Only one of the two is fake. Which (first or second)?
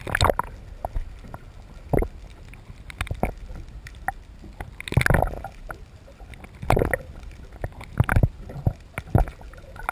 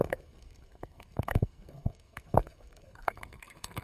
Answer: second